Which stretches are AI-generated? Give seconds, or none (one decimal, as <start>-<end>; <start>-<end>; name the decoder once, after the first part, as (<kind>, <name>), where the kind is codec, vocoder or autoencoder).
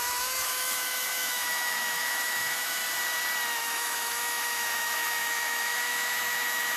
0.0-2.8 (autoencoder, DAC-VAE); 3.6-6.8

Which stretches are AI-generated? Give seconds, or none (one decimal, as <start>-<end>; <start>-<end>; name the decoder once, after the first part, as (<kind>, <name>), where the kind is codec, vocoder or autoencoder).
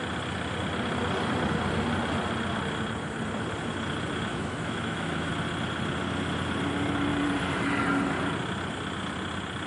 4.3-5.3 (autoencoder, DAC-VAE)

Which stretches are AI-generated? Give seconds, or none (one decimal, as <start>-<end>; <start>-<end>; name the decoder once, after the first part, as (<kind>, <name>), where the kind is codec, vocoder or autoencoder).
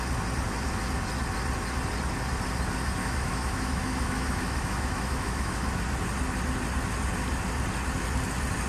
3.0-5.8 (autoencoder, DAC-VAE)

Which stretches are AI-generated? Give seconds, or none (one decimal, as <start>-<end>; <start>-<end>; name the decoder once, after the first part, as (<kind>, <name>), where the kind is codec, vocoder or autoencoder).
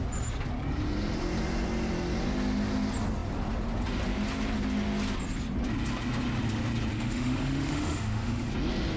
6.9-8.5 (autoencoder, DAC-VAE)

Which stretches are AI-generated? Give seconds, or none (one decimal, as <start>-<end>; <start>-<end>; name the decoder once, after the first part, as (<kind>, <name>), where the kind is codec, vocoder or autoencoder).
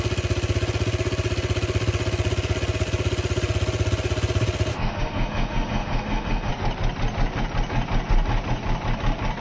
4.7-6.5 (autoencoder, DAC-VAE)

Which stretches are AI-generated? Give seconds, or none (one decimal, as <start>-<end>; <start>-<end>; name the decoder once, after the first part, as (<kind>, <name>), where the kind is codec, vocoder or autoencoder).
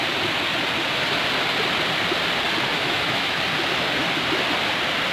2.7-3.4 (autoencoder, DAC-VAE)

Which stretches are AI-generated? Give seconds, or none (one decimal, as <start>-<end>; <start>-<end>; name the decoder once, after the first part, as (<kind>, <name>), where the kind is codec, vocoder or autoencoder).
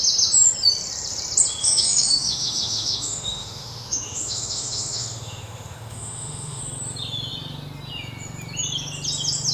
1.6-6.6 (autoencoder, DAC-VAE)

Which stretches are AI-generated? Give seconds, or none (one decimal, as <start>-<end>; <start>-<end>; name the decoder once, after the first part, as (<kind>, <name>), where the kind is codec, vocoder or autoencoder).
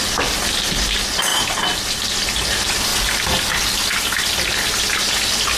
none